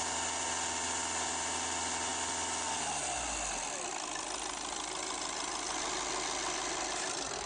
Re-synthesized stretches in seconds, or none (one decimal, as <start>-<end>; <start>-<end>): none